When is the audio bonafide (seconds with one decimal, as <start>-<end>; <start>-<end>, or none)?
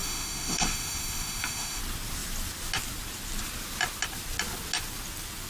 1.8-5.5